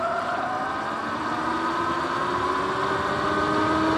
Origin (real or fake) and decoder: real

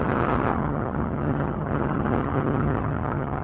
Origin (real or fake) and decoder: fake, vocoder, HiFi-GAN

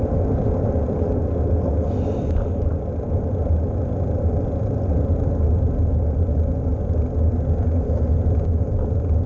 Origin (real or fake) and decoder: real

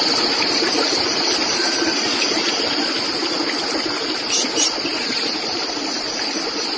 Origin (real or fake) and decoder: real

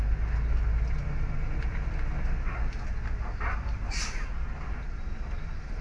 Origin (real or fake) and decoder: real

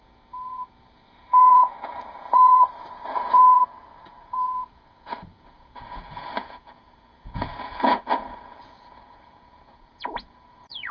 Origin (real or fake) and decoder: fake, vocoder, Vocos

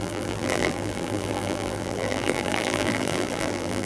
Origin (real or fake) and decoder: fake, vocoder, BigVGAN v2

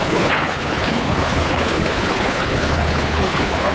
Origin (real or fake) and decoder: fake, codec, HILCodec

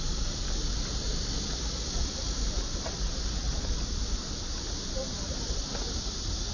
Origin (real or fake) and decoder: real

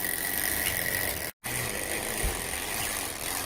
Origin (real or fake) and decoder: real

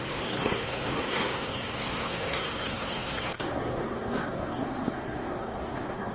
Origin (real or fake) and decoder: fake, codec, SNAC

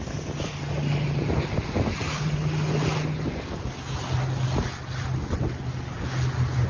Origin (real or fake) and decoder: real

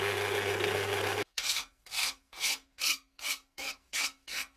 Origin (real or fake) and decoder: fake, codec, SNAC